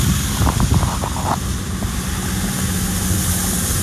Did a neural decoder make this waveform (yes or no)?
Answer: no